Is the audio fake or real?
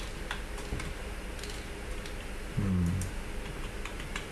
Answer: real